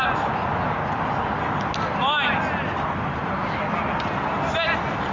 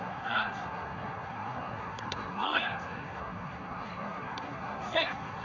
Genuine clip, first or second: first